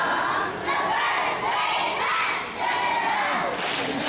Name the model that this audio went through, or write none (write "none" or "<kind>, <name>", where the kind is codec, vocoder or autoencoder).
none